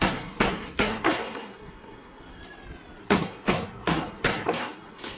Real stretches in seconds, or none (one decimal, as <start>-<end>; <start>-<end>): 2.4-3.0